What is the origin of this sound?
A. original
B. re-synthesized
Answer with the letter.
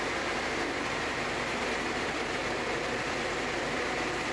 B